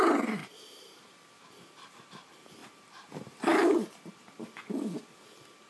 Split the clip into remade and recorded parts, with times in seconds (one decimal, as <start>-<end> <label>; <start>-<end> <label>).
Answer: 0.0-0.4 recorded; 0.4-1.0 remade; 1.0-2.6 recorded; 2.6-4.0 remade; 4.0-5.7 recorded